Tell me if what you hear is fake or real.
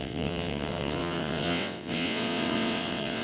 fake